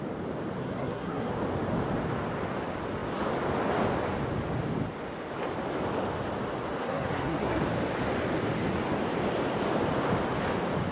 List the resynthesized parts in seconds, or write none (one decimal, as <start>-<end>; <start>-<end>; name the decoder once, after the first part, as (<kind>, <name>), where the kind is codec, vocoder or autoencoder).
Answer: 0.6-1.3 (codec, SNAC); 6.8-7.6